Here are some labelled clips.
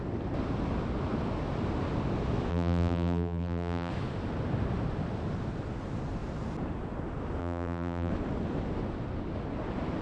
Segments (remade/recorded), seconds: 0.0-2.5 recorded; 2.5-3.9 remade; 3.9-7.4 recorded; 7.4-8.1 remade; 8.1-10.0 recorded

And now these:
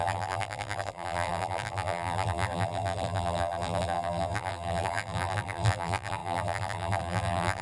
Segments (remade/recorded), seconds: 0.0-7.6 remade